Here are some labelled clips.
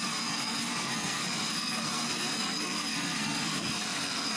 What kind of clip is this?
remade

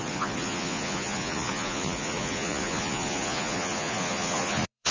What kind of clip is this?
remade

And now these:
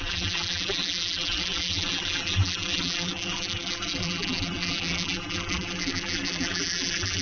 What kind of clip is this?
remade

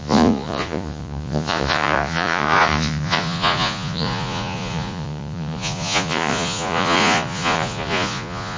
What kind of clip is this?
remade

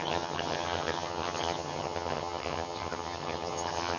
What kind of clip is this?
remade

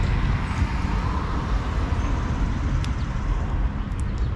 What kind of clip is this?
recorded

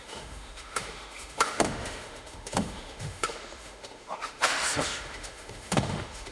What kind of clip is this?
remade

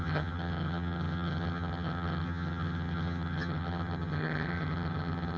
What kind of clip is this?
remade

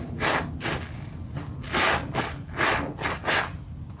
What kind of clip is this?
recorded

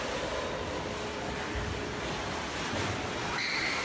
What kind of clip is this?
recorded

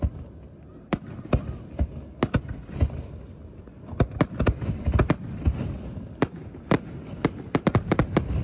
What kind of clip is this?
recorded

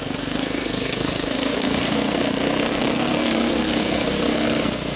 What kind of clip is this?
remade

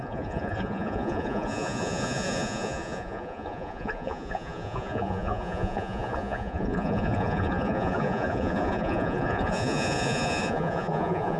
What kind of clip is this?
remade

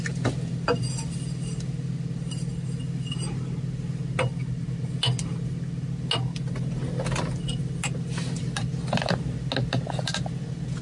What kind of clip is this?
recorded